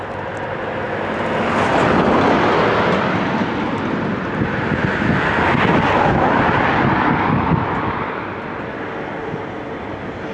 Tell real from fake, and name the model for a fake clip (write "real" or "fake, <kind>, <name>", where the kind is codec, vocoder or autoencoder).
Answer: real